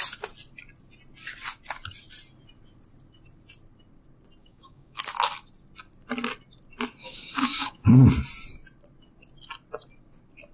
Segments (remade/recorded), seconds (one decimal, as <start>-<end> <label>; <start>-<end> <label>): 0.0-4.4 recorded; 4.4-5.0 remade; 5.0-7.0 recorded; 7.0-7.9 remade; 7.9-10.5 recorded